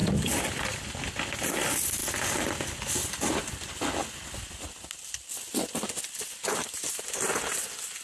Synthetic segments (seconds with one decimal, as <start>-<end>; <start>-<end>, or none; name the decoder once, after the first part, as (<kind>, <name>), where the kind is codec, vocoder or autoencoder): 0.0-2.0 (vocoder, BigVGAN v2); 6.0-8.0